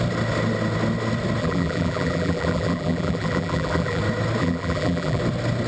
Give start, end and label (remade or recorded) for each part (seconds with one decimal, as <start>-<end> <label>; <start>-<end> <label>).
0.0-1.4 recorded; 1.4-4.0 remade; 4.0-4.4 recorded; 4.4-5.2 remade; 5.2-5.7 recorded